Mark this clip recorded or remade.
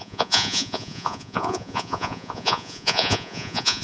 remade